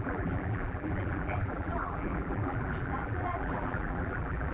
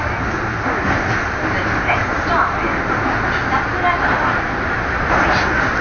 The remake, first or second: first